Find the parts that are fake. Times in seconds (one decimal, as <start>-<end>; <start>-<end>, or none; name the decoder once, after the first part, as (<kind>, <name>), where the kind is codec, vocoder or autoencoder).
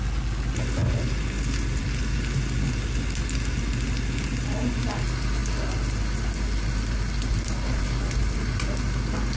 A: none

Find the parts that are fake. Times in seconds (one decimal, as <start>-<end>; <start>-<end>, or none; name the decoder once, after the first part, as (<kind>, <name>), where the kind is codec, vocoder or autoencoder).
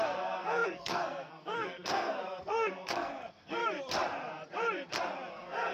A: 0.0-3.6 (codec, SNAC); 5.3-5.7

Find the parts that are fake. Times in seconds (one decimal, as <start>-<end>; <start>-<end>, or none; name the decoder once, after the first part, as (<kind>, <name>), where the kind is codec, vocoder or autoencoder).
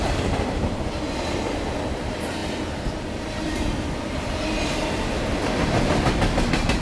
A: none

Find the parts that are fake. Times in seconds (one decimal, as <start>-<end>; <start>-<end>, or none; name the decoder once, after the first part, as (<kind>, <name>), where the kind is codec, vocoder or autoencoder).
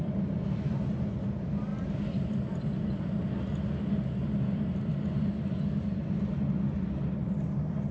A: none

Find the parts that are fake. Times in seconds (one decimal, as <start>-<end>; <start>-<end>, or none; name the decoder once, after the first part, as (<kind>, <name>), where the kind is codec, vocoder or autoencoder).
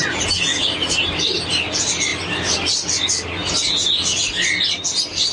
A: none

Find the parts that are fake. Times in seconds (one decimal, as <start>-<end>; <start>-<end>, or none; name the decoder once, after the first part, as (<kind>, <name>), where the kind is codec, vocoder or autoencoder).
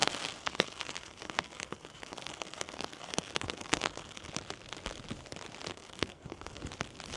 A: 0.0-4.3 (codec, SNAC); 5.7-6.6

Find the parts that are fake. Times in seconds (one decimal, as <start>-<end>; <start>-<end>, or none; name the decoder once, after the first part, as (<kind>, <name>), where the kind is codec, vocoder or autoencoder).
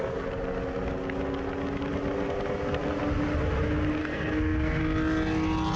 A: 4.0-4.8 (codec, SNAC)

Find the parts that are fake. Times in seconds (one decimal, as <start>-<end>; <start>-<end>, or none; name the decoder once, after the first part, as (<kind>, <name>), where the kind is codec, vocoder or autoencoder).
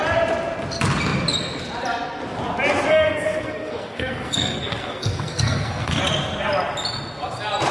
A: 2.9-6.0 (codec, SNAC)